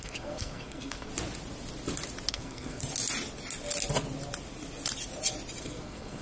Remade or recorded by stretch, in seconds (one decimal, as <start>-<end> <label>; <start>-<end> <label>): 0.0-1.1 remade; 1.1-2.3 recorded; 2.3-2.8 remade; 2.8-5.6 recorded; 5.6-6.2 remade